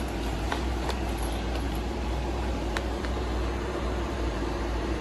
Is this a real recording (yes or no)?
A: no